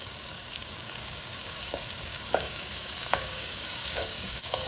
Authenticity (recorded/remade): remade